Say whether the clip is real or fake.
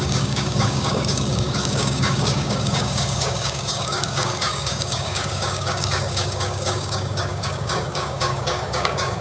fake